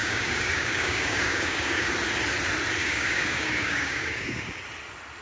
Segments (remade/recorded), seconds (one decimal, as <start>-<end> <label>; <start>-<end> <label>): 0.0-1.9 remade; 1.9-2.8 recorded; 2.8-4.6 remade; 4.6-5.2 recorded

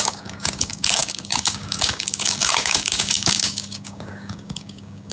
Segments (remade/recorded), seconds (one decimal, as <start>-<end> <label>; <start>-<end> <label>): 0.0-5.1 remade

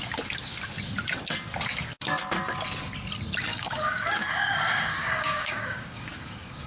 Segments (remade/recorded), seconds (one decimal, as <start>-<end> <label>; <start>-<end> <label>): 0.0-3.5 recorded; 3.5-6.7 remade

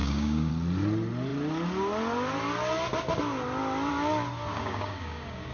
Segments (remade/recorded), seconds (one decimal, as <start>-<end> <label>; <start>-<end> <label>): 0.0-0.5 remade; 0.5-4.5 recorded; 4.5-5.5 remade